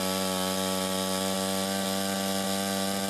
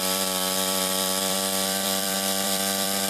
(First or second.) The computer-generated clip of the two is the second